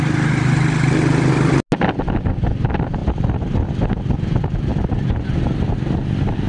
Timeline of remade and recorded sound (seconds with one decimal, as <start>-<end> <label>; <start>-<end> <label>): 0.0-6.5 recorded